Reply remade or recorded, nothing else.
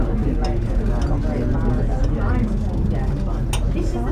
recorded